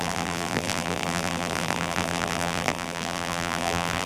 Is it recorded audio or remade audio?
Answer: remade